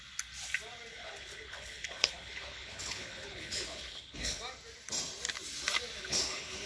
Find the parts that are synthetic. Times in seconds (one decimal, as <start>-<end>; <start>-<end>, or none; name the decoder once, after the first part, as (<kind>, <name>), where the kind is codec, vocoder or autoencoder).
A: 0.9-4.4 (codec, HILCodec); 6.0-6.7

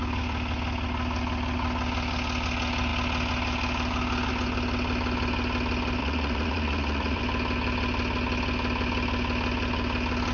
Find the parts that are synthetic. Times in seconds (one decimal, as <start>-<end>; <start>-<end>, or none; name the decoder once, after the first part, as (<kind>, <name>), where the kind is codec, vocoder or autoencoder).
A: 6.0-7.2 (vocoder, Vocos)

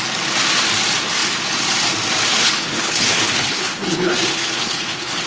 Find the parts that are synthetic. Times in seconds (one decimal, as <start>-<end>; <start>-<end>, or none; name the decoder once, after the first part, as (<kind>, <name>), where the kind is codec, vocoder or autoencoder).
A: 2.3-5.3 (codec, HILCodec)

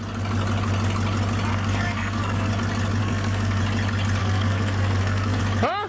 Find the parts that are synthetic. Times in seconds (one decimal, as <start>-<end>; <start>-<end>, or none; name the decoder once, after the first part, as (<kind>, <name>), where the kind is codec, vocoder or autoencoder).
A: 1.5-2.5 (codec, SNAC); 3.0-3.6; 4.2-5.4

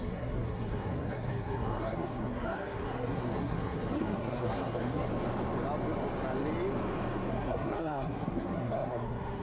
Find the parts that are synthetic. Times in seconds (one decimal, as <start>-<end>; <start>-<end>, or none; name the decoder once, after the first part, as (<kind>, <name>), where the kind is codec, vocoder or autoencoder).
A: 0.0-5.1 (codec, SNAC); 7.3-9.4

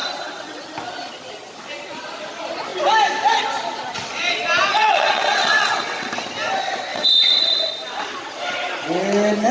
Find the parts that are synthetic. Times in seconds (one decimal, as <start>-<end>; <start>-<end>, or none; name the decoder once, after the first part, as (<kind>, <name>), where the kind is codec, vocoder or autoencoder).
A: 0.0-0.6 (vocoder, WaveNeXt); 4.7-6.1; 6.9-7.7